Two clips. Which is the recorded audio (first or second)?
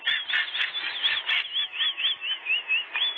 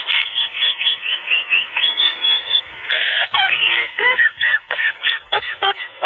first